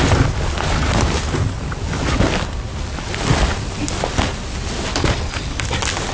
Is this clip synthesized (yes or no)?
no